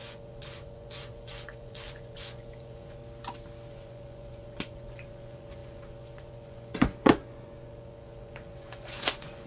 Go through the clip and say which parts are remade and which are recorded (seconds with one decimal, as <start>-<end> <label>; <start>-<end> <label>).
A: 0.0-3.0 remade; 3.0-3.7 recorded; 3.7-9.5 remade